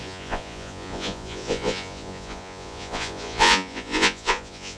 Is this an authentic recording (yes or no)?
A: no